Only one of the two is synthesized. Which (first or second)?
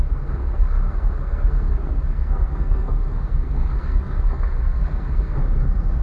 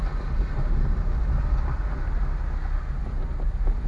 first